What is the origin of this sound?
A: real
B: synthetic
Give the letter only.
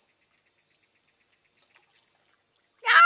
A